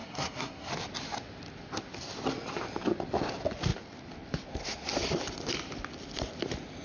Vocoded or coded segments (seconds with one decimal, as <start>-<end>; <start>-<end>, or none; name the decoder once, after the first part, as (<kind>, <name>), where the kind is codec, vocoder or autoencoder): 0.0-0.7 (codec, SNAC)